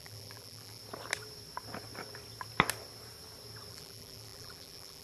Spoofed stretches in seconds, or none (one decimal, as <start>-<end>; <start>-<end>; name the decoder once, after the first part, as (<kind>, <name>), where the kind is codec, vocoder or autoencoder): 0.0-0.8 (vocoder, BigVGAN v2); 3.7-5.0